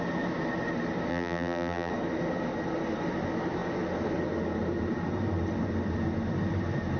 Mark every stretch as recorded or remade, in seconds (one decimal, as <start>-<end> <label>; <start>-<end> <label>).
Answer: 0.0-1.1 recorded; 1.1-1.9 remade; 1.9-7.0 recorded

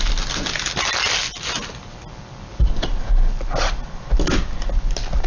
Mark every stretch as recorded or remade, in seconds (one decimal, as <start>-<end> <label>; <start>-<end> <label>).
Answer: 0.0-5.3 recorded

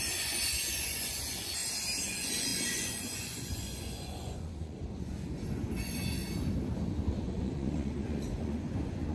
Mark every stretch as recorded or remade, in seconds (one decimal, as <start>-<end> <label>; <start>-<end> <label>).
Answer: 0.0-1.6 remade; 1.6-2.1 recorded; 2.1-6.2 remade; 6.2-6.9 recorded; 6.9-9.1 remade

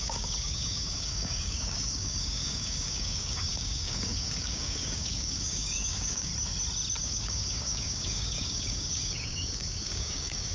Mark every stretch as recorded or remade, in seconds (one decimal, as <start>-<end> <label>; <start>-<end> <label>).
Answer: 0.0-6.3 remade; 6.3-7.0 recorded; 7.0-10.5 remade

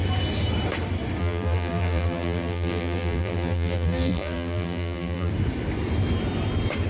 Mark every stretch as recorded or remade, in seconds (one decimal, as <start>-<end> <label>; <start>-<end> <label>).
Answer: 0.0-1.2 recorded; 1.2-5.3 remade; 5.3-6.9 recorded